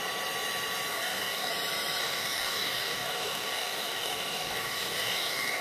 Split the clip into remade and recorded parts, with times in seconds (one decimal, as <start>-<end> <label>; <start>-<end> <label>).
0.0-0.9 recorded; 0.9-1.5 remade; 1.5-2.0 recorded; 2.0-5.6 remade